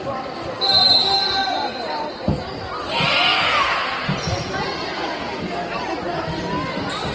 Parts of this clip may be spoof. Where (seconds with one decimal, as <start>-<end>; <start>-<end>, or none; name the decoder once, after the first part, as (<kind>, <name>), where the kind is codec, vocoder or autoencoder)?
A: 3.3-5.4 (vocoder, Vocos)